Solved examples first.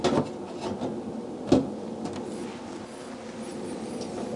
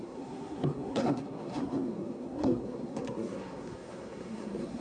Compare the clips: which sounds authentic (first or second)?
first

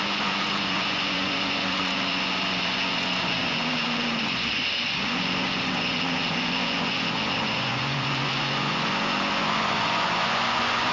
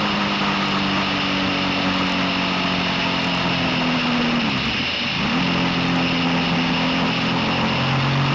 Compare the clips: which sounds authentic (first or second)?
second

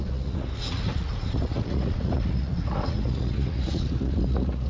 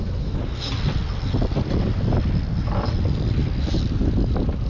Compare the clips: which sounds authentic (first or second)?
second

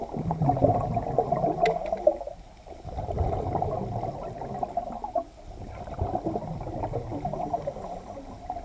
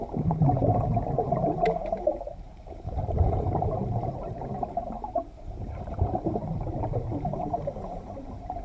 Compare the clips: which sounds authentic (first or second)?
first